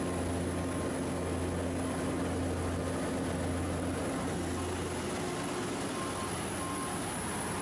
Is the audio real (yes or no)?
yes